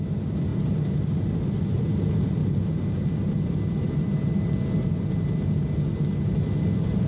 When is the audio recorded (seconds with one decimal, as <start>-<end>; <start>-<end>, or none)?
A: 0.0-2.4; 3.0-7.1